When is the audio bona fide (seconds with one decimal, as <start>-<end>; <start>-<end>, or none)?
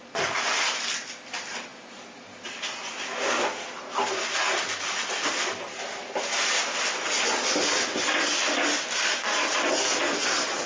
0.0-10.7